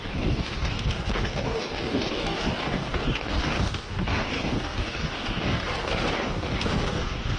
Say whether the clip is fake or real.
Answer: fake